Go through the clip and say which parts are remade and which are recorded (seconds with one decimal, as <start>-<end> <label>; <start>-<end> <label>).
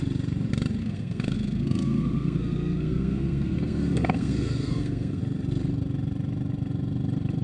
0.0-0.8 recorded; 0.8-5.2 remade; 5.2-7.4 recorded